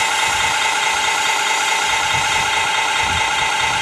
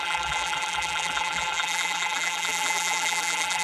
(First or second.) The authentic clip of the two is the first